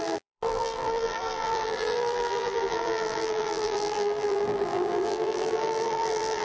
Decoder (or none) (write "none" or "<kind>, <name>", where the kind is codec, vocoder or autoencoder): vocoder, BigVGAN v2